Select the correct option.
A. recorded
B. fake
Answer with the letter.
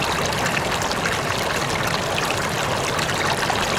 B